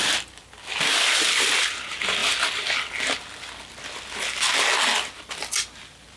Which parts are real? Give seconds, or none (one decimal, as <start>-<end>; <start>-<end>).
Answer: 0.0-6.2